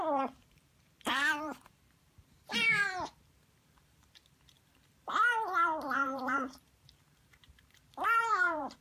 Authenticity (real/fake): fake